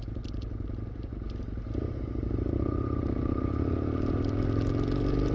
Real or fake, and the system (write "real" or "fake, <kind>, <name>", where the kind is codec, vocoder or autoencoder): real